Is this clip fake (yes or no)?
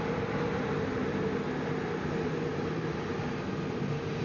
no